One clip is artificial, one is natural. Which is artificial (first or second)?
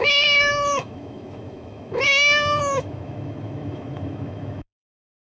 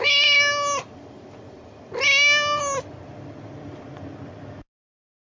first